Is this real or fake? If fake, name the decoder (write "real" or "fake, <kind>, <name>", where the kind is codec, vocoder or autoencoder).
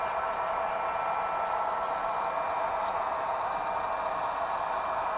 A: real